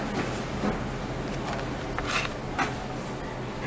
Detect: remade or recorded recorded